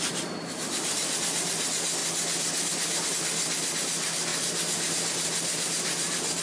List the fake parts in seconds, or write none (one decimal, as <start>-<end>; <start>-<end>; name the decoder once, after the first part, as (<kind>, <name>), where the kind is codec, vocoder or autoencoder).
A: none